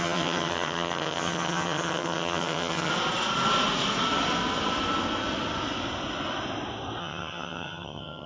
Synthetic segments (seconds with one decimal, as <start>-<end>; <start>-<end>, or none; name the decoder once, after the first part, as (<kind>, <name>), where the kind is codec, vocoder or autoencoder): 0.0-2.9 (vocoder, HiFi-GAN); 7.0-8.3